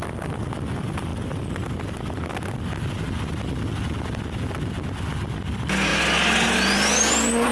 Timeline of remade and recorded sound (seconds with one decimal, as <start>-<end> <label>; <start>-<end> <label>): 0.0-7.5 recorded